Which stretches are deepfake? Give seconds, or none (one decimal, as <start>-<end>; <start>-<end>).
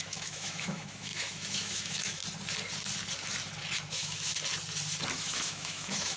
0.0-2.2; 3.9-4.3; 5.1-6.2